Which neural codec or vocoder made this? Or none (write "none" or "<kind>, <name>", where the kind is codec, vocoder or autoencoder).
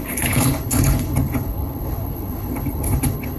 codec, HILCodec